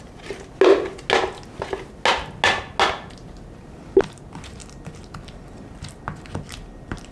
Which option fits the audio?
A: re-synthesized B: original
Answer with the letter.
B